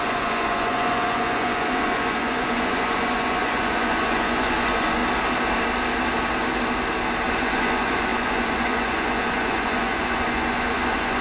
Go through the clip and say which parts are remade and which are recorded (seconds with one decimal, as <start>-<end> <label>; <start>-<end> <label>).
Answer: 0.0-5.0 remade; 5.0-7.3 recorded; 7.3-11.2 remade